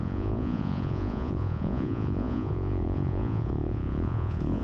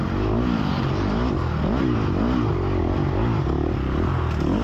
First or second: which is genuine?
second